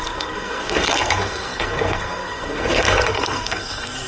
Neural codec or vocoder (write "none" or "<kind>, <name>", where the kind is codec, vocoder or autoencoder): codec, SNAC